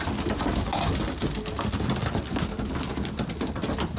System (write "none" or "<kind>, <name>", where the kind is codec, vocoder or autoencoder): none